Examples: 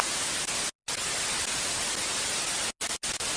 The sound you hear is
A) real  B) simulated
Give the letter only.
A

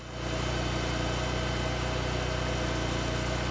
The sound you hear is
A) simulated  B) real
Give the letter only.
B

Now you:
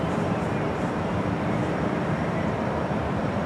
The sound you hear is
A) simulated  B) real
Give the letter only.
A